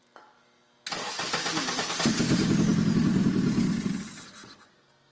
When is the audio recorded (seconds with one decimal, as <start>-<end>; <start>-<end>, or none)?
0.0-5.1